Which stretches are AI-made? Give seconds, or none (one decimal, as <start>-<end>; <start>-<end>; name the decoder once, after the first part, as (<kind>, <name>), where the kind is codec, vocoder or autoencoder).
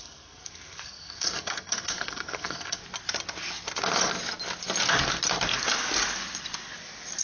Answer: 0.0-2.8 (codec, SNAC)